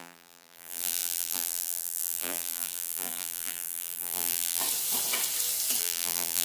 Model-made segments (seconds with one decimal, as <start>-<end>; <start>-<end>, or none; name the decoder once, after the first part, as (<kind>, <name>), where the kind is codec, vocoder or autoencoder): 0.0-4.6 (vocoder, BigVGAN v2); 5.8-6.4